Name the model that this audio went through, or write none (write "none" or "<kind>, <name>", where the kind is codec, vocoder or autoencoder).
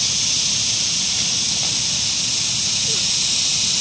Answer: none